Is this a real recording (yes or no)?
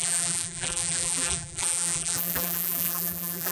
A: no